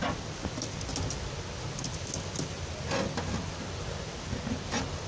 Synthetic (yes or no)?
no